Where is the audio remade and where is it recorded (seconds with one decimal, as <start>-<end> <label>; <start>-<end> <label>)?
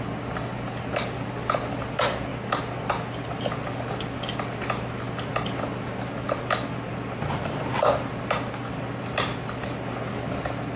0.0-10.8 recorded